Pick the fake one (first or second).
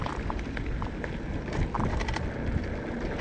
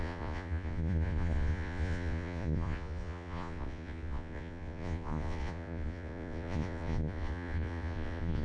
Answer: second